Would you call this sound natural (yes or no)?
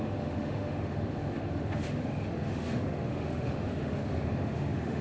no